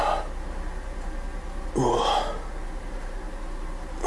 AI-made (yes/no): no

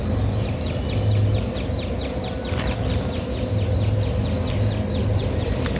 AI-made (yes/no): no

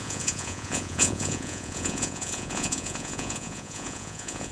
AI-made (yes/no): yes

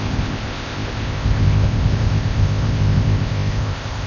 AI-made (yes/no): yes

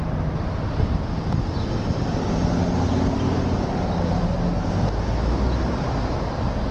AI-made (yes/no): no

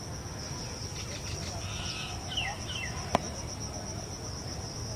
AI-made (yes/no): no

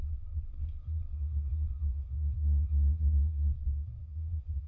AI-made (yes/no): yes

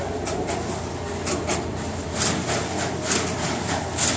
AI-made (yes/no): no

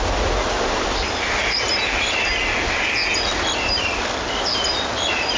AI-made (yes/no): no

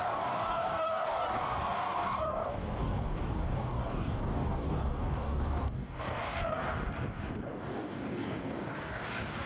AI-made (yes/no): yes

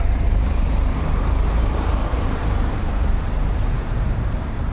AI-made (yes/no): yes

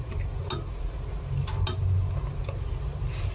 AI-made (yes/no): no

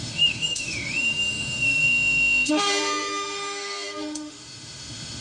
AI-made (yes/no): yes